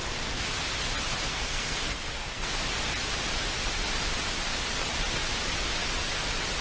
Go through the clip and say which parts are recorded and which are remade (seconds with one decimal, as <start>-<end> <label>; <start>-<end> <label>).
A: 0.0-1.3 recorded; 1.3-2.5 remade; 2.5-6.6 recorded